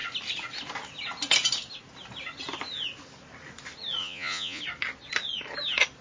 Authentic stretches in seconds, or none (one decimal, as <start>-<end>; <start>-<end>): 0.0-4.0; 4.6-6.0